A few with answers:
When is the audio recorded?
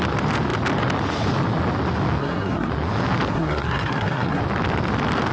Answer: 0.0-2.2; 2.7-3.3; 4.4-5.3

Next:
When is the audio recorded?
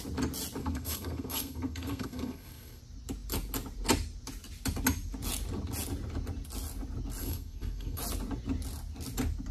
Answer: 0.0-0.6; 2.8-7.2; 8.0-9.5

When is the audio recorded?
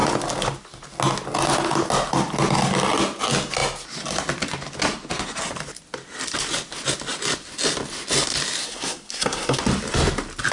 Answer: 0.0-8.6; 9.6-10.5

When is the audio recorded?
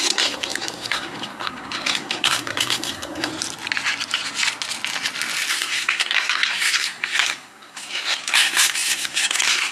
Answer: 3.3-5.5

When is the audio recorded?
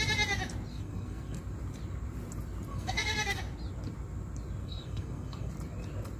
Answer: 0.0-0.7; 1.4-2.7; 3.4-4.6; 5.5-6.2